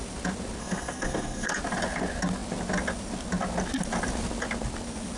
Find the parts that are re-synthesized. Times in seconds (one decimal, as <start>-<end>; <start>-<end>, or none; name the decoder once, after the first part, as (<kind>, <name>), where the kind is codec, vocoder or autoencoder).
0.6-1.5 (codec, SNAC)